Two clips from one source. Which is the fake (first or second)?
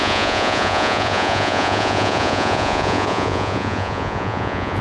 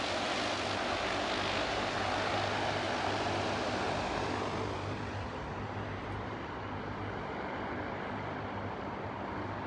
first